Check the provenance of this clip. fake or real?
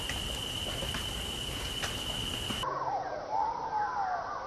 real